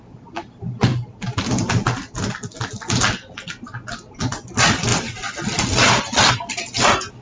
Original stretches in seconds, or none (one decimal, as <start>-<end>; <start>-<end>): 0.9-4.3; 4.9-6.3